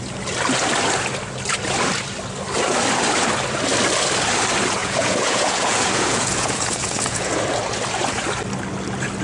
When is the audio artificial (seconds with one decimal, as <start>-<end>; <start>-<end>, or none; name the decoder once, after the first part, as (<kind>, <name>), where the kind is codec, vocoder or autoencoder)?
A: 4.8-7.3 (vocoder, Vocos)